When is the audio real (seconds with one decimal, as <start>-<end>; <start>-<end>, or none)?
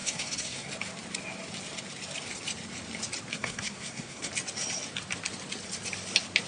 0.7-3.3; 4.3-6.5